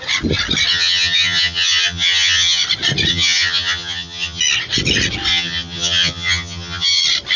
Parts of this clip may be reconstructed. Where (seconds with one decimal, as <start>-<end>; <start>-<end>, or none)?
0.7-2.6; 3.1-4.4; 5.3-7.0